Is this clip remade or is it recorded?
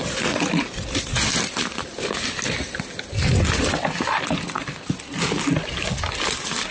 recorded